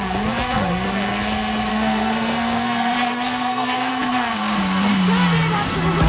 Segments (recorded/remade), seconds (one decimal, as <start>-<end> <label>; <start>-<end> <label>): 0.0-1.7 recorded; 1.7-3.9 remade; 3.9-6.1 recorded

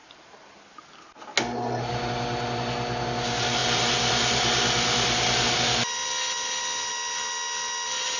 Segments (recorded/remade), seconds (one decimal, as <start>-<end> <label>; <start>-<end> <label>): 0.0-8.2 recorded

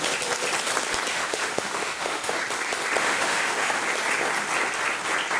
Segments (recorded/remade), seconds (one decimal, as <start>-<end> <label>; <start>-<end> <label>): 0.0-1.1 recorded; 1.1-2.4 remade; 2.4-3.0 recorded; 3.0-3.8 remade; 3.8-5.4 recorded

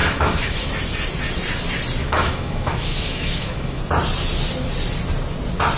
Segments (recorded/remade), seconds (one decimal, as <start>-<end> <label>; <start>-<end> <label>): 0.0-0.7 remade; 0.7-2.0 recorded; 2.0-3.8 remade; 3.8-5.8 recorded

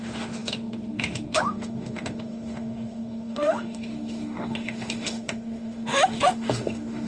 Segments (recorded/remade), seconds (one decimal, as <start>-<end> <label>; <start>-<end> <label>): 0.0-7.1 remade

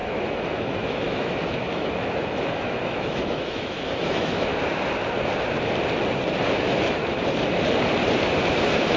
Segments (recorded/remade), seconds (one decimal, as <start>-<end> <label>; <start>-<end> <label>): 0.0-4.5 remade; 4.5-6.5 recorded; 6.5-7.0 remade; 7.0-9.0 recorded

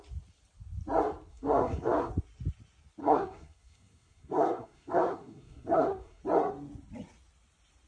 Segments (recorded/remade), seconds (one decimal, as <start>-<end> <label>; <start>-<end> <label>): 0.0-1.3 recorded; 1.3-2.1 remade; 2.1-3.0 recorded; 3.0-6.2 remade; 6.2-7.9 recorded

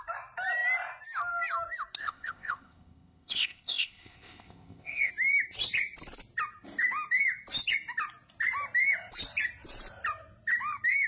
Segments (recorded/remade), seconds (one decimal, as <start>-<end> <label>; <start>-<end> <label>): 0.0-2.0 recorded; 2.0-5.1 remade; 5.1-11.1 recorded